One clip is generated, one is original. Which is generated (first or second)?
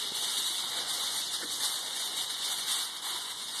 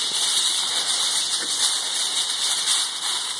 first